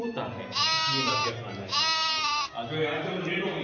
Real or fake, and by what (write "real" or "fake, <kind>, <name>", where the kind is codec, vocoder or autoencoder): real